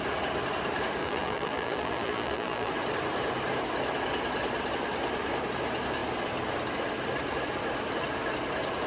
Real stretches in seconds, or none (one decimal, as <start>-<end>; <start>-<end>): 0.0-1.0; 2.7-8.9